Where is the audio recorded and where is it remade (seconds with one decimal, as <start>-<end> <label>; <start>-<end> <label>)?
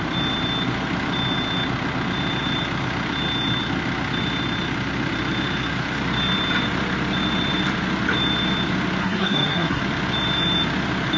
0.0-9.0 recorded; 9.0-9.8 remade; 9.8-11.2 recorded